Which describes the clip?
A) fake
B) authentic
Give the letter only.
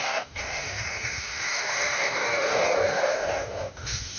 A